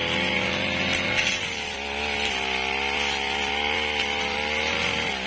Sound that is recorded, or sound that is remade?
recorded